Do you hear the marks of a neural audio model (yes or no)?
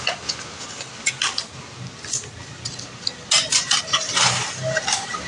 no